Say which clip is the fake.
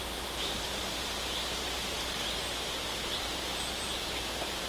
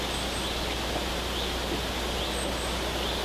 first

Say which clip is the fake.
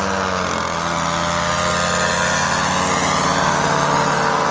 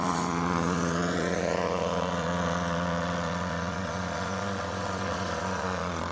second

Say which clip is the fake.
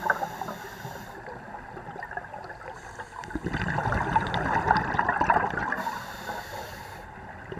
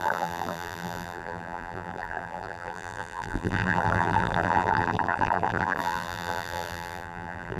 second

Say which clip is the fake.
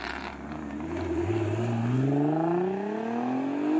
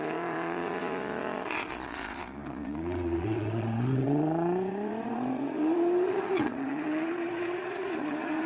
second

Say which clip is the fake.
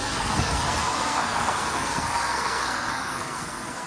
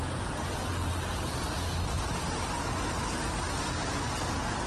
first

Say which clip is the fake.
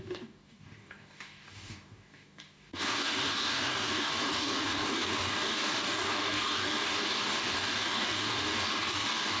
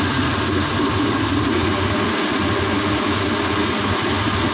first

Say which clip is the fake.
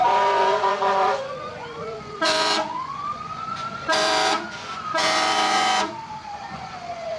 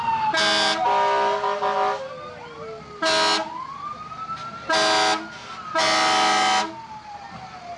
first